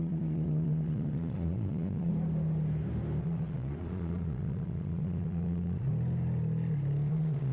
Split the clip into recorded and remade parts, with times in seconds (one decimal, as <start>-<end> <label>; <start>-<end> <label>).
0.0-2.1 remade; 2.1-3.2 recorded; 3.2-5.9 remade; 5.9-7.1 recorded; 7.1-7.5 remade